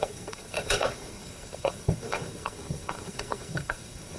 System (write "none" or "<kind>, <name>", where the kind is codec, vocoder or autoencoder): codec, SNAC